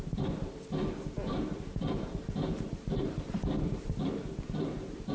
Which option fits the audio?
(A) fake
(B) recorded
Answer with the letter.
A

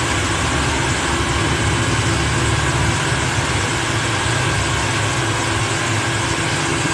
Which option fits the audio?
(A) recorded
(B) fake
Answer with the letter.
A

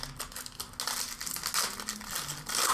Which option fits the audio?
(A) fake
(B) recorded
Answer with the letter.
B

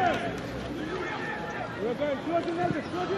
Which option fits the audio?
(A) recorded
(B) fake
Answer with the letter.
A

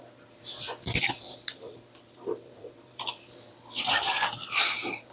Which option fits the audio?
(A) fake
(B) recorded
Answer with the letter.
A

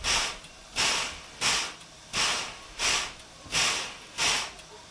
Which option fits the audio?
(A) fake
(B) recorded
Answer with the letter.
B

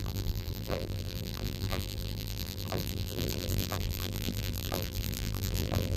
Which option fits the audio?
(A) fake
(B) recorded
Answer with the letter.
A